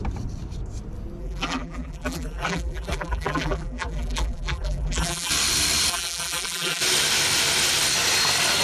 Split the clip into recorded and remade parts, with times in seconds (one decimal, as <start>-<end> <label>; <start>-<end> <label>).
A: 0.0-1.2 recorded; 1.2-5.3 remade; 5.3-5.9 recorded; 5.9-6.8 remade; 6.8-8.6 recorded